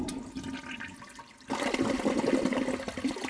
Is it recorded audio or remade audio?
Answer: recorded